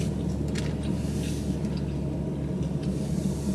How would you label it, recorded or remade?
recorded